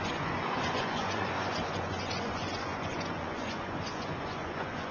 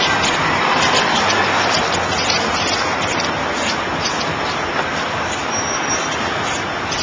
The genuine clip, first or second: second